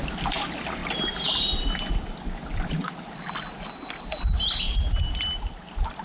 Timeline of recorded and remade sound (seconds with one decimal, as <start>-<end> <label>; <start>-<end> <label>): 0.0-6.0 recorded